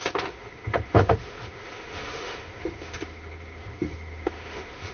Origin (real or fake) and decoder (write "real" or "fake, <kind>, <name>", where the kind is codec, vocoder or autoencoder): fake, autoencoder, DAC-VAE